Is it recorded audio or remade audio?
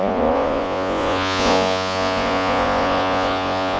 remade